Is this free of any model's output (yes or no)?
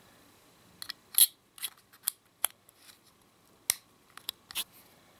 yes